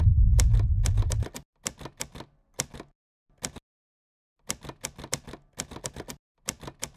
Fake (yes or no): no